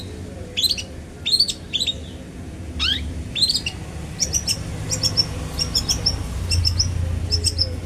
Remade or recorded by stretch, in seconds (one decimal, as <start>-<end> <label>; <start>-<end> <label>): 0.0-2.9 recorded; 2.9-3.5 remade; 3.5-7.9 recorded